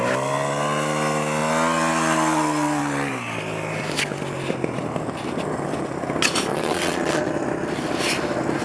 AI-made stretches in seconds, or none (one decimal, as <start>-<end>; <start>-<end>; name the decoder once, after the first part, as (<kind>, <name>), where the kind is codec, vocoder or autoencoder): 6.5-7.3 (vocoder, WaveNeXt)